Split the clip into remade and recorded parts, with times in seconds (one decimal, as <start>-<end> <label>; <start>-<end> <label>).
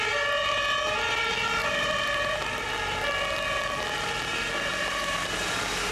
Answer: 0.0-1.6 recorded; 1.6-2.6 remade; 2.6-4.7 recorded; 4.7-5.9 remade